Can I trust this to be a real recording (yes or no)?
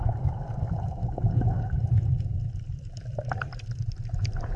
yes